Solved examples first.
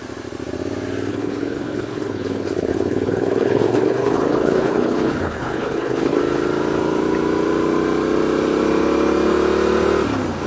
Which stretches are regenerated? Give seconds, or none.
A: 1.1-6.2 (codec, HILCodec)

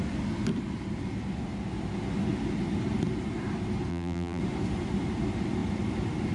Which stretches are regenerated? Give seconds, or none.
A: 3.9-4.4 (vocoder, BigVGAN v2)